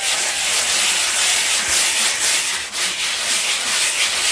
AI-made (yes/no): no